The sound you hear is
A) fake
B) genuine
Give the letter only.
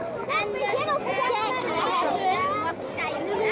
B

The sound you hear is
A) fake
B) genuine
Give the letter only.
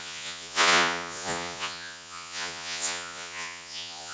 A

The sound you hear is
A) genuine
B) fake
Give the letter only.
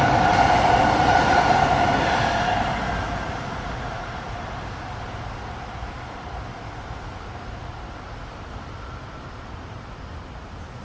A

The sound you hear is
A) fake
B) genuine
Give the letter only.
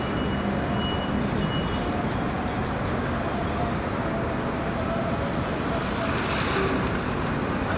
B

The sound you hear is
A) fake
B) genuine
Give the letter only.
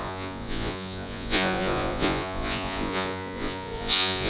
A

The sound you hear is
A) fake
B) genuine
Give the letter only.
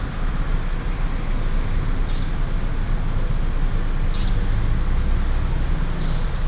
B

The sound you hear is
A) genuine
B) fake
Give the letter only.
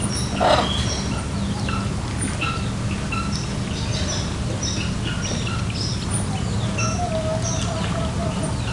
A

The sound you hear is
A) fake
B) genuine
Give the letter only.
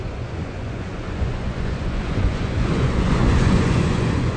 A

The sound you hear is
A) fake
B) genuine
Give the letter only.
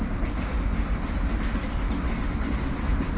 B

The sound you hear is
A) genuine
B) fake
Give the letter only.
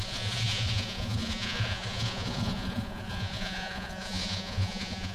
B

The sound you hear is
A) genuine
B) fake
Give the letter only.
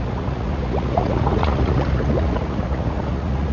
B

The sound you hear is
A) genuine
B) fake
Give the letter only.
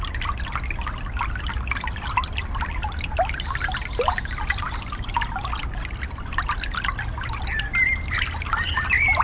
A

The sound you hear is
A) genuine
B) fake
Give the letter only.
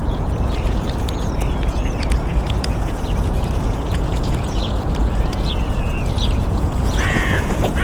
B